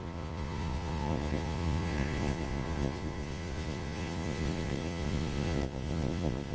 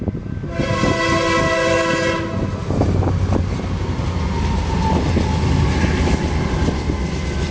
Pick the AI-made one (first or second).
first